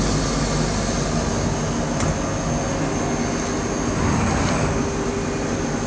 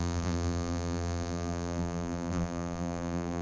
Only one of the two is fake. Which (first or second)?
second